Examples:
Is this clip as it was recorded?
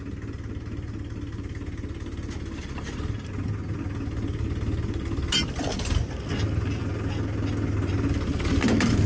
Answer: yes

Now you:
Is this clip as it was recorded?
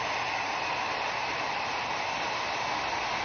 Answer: yes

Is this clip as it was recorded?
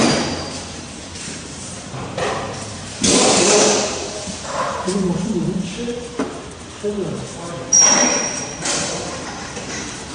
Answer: no